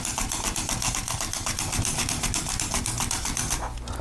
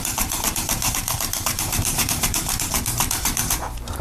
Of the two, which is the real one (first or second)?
first